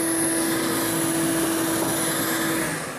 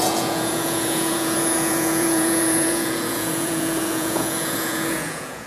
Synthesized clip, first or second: second